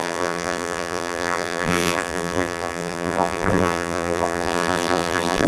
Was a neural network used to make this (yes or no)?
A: yes